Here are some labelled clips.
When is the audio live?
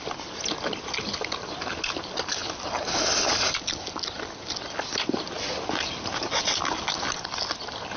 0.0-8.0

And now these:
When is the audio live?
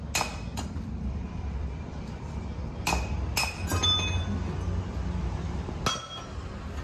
0.0-0.5; 2.4-6.8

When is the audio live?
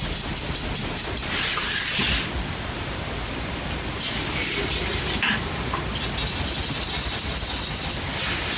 0.0-8.6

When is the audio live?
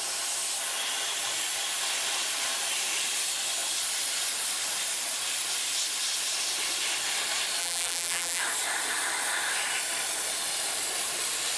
0.0-7.6; 8.4-11.6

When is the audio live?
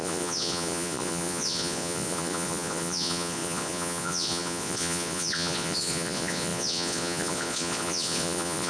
none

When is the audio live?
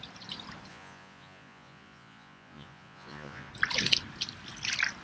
0.0-0.7; 3.5-5.0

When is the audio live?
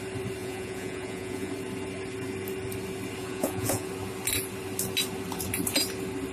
0.0-0.4; 1.5-3.2; 3.9-6.3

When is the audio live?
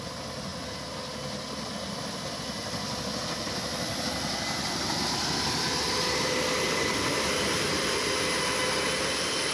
0.0-9.5